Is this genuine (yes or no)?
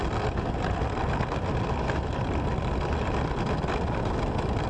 yes